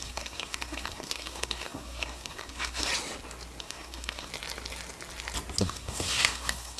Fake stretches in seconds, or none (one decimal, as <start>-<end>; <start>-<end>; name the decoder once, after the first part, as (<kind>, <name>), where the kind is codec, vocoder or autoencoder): 0.0-2.9 (codec, SNAC); 3.6-4.3; 5.6-6.8